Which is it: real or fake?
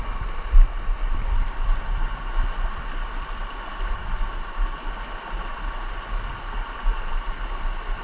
real